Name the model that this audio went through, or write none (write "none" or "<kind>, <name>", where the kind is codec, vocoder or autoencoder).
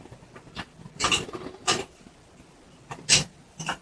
none